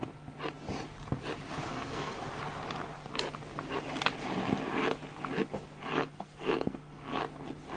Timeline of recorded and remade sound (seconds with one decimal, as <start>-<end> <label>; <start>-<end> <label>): 0.0-1.7 recorded; 1.7-2.3 remade; 2.3-5.9 recorded; 5.9-7.2 remade; 7.2-7.8 recorded